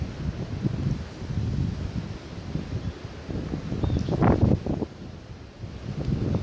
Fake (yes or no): no